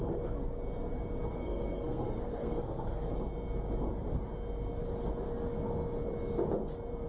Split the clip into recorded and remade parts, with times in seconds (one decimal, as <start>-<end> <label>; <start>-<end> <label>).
0.0-1.3 recorded; 1.3-3.1 remade; 3.1-7.1 recorded